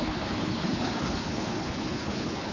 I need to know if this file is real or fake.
fake